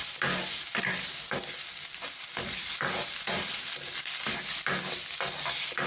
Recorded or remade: recorded